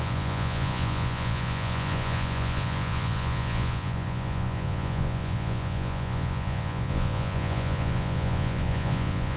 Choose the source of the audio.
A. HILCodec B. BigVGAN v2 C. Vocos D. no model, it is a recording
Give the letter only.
C